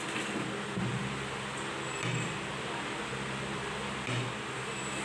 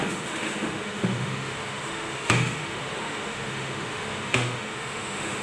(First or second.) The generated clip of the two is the second